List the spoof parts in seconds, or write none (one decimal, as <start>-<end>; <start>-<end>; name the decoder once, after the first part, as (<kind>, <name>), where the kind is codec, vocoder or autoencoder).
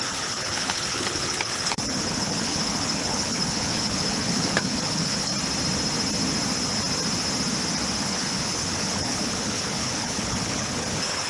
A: 0.0-5.3 (codec, HILCodec); 8.0-11.3